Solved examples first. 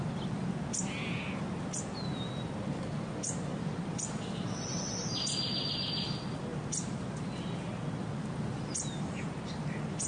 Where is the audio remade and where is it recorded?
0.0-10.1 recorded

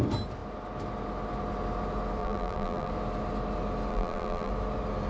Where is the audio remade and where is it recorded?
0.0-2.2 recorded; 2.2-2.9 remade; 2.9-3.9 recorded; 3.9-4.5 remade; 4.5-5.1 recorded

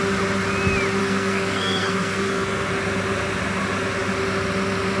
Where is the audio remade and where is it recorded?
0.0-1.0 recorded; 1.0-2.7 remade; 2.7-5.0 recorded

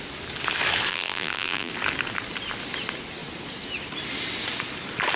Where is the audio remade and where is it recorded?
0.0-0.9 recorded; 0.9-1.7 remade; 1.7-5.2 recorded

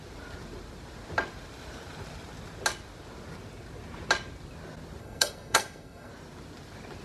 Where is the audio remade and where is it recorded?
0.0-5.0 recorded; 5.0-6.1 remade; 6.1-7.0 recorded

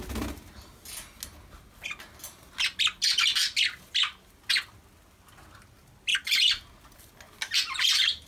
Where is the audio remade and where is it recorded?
0.0-8.3 recorded

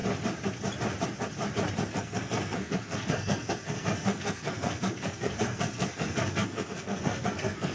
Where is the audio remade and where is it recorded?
0.0-1.9 recorded; 1.9-7.7 remade

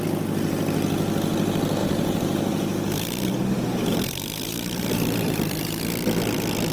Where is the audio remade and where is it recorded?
0.0-1.8 recorded; 1.8-5.8 remade; 5.8-6.7 recorded